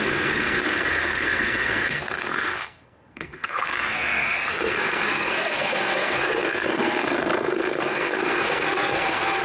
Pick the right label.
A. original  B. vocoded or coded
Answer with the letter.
B